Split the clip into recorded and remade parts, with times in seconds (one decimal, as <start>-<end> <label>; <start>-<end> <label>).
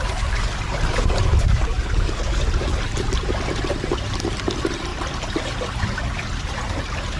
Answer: 0.0-1.3 recorded; 1.3-2.4 remade; 2.4-7.2 recorded